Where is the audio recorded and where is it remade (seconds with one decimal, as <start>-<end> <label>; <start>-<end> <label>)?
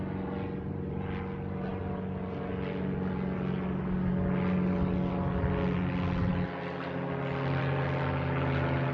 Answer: 0.0-8.9 recorded